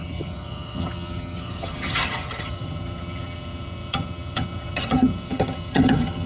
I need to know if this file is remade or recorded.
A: remade